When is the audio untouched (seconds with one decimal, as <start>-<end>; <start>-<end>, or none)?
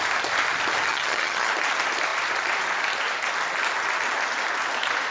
0.0-0.9; 1.5-5.1